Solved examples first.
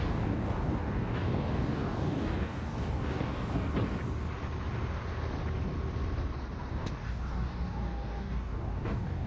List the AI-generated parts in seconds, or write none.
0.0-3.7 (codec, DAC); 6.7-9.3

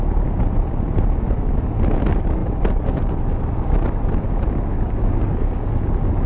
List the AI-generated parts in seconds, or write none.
4.7-5.7 (codec, DAC)